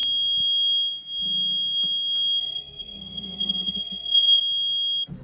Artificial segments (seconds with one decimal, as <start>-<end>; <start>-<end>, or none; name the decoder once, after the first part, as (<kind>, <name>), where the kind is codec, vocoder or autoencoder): 2.4-4.4 (codec, SNAC)